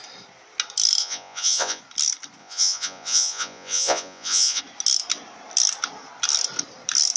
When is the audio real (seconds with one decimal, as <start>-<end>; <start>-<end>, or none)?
0.0-1.0; 1.8-2.4; 4.6-7.2